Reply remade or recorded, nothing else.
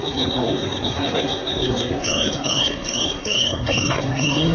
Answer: remade